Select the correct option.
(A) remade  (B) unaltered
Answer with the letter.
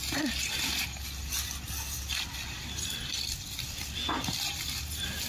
B